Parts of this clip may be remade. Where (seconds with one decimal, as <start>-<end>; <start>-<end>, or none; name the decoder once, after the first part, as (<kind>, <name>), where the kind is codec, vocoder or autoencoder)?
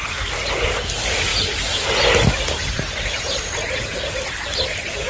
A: none